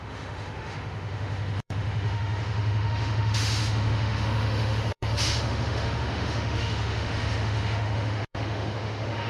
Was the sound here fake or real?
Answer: fake